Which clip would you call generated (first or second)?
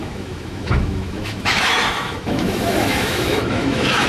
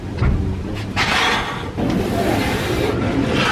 first